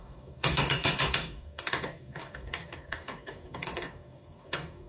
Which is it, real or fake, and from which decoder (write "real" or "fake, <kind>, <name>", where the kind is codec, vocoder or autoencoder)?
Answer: fake, codec, DAC